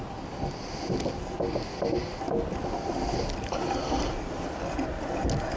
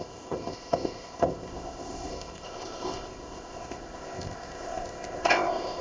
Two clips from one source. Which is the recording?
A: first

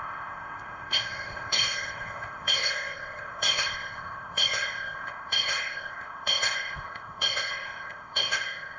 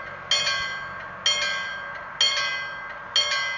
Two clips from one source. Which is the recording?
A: second